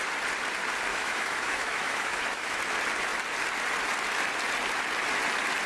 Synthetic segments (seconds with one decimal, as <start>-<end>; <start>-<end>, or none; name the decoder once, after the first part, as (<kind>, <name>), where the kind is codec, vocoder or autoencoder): 0.9-2.6 (autoencoder, DAC-VAE)